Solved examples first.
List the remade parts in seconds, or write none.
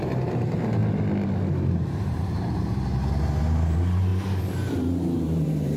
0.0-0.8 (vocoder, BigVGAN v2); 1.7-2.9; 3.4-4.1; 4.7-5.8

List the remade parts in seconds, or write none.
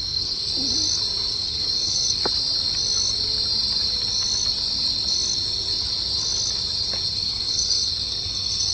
0.0-0.5 (codec, SNAC); 1.3-2.2; 7.1-8.7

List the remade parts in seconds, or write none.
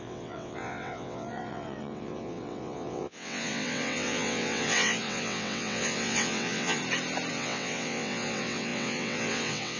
0.0-6.8 (vocoder, WaveNeXt); 7.3-9.8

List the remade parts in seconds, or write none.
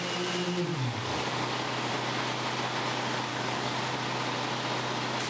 0.7-1.9 (codec, DAC); 3.3-3.9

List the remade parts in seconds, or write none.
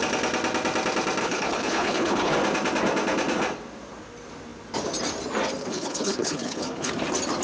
1.2-2.3 (codec, HILCodec); 5.6-6.9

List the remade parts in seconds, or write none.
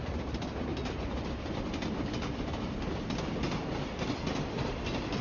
none